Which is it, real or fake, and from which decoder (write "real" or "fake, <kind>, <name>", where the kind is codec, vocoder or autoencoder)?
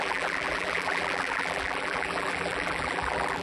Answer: fake, vocoder, BigVGAN v2